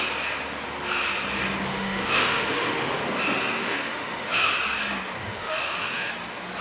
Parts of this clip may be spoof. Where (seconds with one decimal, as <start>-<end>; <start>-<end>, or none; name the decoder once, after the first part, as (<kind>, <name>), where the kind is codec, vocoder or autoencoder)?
1.7-3.0 (autoencoder, DAC-VAE); 3.6-4.5; 5.2-6.1